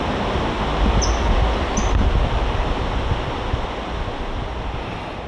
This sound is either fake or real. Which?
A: real